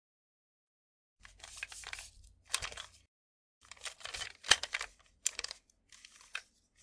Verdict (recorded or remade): remade